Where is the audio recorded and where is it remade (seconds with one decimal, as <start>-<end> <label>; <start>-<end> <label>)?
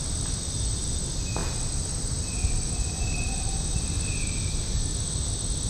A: 0.0-5.7 recorded